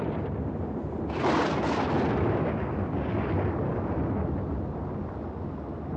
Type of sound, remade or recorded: recorded